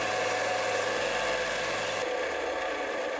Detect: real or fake real